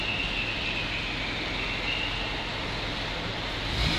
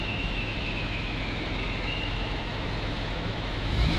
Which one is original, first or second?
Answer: first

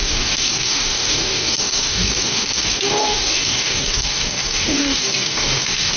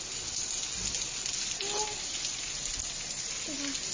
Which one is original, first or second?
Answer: second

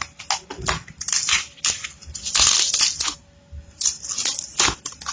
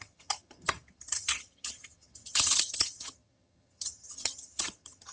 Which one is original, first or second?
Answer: first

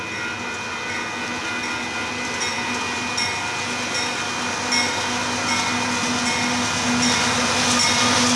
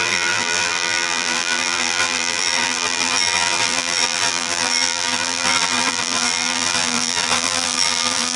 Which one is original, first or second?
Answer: first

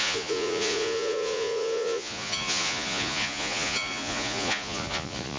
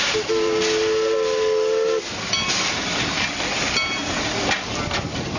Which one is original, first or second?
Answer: second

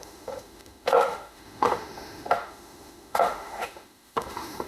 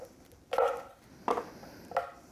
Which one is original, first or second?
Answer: second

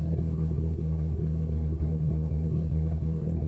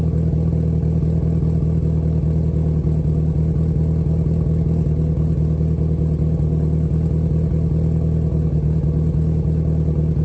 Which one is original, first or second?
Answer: second